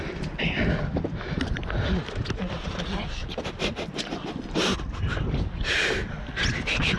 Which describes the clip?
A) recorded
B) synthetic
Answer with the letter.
A